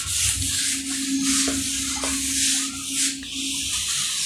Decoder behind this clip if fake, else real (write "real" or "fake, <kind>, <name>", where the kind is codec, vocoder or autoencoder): real